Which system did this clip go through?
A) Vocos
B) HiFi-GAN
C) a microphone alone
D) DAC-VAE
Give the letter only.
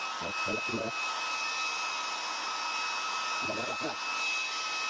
C